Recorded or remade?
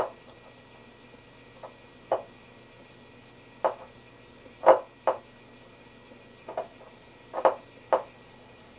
recorded